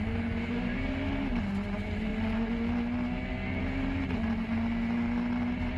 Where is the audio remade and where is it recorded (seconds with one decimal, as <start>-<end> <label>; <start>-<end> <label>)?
0.0-5.8 recorded